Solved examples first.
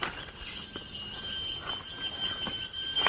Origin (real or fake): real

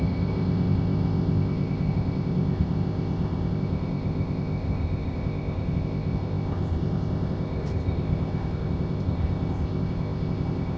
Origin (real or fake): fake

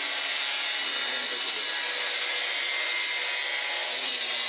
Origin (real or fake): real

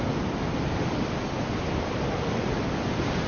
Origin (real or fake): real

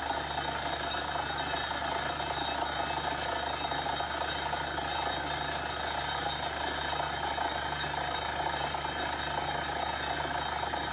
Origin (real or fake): real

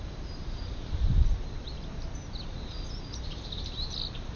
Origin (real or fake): real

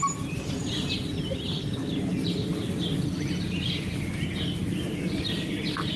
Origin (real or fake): real